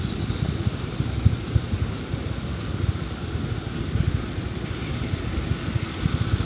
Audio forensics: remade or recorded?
recorded